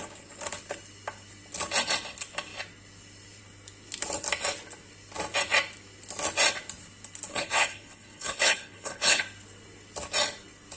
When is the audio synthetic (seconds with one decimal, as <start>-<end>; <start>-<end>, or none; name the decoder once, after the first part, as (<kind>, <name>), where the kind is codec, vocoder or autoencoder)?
7.3-9.2 (codec, HILCodec)

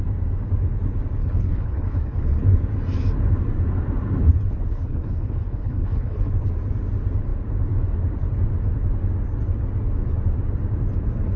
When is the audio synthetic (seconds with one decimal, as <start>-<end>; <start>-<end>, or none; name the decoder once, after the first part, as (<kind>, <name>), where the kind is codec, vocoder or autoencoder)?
1.2-2.4 (codec, HILCodec); 4.7-6.3

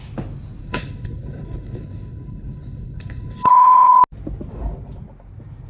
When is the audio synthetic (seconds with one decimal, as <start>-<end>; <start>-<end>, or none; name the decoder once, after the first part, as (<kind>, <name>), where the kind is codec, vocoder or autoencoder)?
0.6-4.0 (codec, HILCodec)

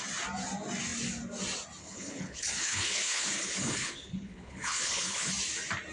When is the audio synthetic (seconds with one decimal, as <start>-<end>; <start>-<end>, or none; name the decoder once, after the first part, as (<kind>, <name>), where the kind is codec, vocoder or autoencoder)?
1.8-5.3 (codec, HILCodec)

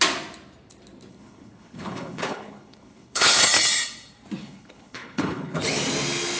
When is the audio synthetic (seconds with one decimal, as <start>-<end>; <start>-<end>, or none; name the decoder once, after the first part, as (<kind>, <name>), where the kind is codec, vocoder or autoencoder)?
1.1-3.4 (codec, HILCodec); 4.4-5.6

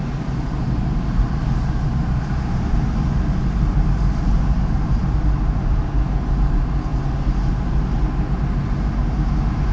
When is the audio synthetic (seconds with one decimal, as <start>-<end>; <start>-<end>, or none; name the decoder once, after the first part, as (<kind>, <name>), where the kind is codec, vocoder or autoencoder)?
none

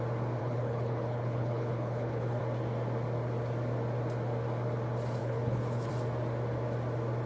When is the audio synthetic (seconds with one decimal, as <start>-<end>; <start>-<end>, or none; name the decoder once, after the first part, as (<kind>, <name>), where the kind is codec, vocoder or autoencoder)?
0.4-2.4 (codec, HILCodec); 5.2-5.9

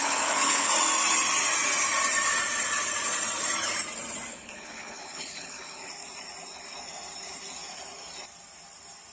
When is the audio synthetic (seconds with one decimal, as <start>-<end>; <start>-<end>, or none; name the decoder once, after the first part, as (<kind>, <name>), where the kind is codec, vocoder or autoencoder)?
0.0-0.7 (codec, HILCodec); 4.3-5.9